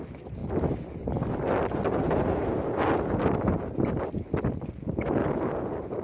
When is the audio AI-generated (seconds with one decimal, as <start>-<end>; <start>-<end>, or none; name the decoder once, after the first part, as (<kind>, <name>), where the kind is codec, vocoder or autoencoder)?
5.2-6.0 (vocoder, BigVGAN v2)